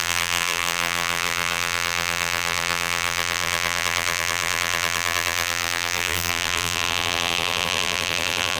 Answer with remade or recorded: remade